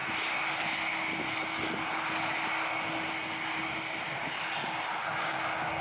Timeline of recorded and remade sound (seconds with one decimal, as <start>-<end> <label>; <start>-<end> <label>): 0.0-5.0 recorded; 5.0-5.8 remade